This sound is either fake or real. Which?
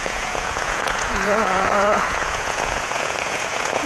fake